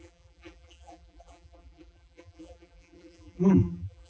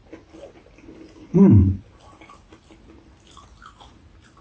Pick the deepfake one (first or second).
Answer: first